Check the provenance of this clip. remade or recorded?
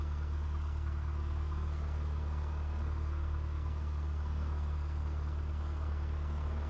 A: remade